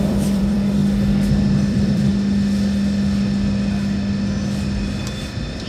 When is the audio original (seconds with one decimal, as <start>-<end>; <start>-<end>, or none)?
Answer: 0.8-1.3; 2.1-5.7